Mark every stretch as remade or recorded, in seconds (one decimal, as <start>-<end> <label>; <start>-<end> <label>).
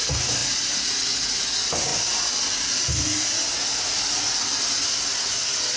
0.0-5.8 recorded